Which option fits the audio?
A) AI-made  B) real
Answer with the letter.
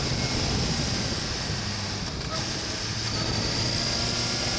B